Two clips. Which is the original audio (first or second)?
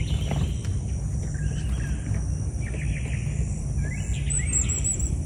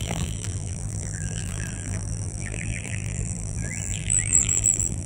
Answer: first